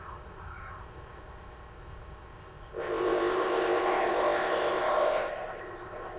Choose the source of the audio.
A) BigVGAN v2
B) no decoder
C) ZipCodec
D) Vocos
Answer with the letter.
C